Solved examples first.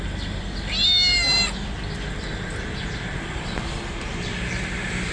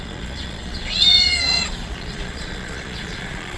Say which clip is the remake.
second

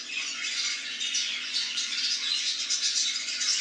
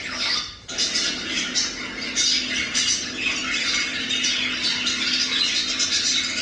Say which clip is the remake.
first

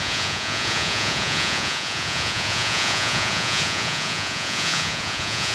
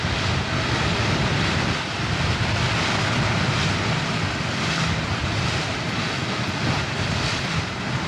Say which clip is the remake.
first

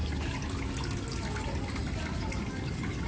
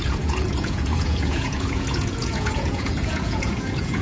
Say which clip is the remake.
second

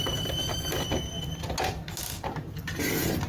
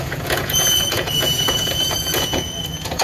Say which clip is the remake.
second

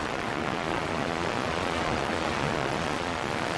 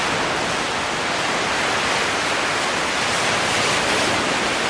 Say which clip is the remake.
first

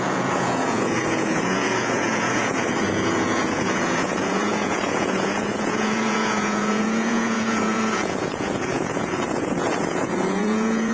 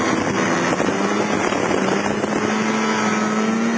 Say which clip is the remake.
first